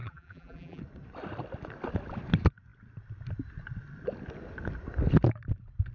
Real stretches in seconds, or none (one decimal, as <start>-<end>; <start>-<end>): 0.8-5.9